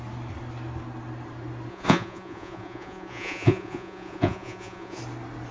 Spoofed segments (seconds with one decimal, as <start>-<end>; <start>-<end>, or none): 1.7-5.0